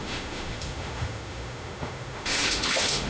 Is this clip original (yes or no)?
no